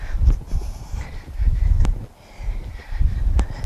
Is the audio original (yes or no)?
no